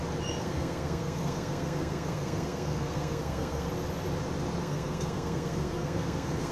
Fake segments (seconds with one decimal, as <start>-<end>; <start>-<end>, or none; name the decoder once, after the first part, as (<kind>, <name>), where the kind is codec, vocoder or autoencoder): 0.4-3.7 (codec, SNAC); 4.6-6.5